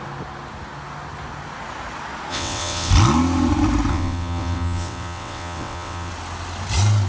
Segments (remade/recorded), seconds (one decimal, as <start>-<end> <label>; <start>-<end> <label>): 0.0-2.3 recorded; 2.3-2.9 remade; 2.9-3.9 recorded; 3.9-6.1 remade; 6.1-7.1 recorded